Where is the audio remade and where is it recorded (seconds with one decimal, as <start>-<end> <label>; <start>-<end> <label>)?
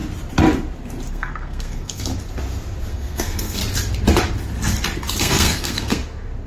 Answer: 0.0-1.1 recorded; 1.1-2.1 remade; 2.1-2.9 recorded; 2.9-3.6 remade; 3.6-5.2 recorded; 5.2-6.0 remade; 6.0-6.5 recorded